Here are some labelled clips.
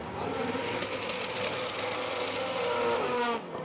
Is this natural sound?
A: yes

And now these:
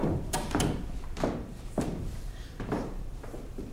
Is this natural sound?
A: no